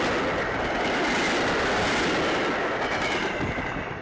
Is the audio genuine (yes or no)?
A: yes